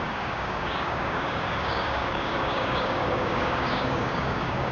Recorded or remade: remade